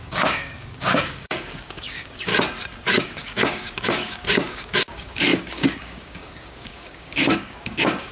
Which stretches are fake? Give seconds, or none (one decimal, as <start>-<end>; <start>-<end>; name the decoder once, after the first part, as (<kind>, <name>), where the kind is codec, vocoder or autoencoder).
0.0-2.3 (codec, DAC); 3.0-8.1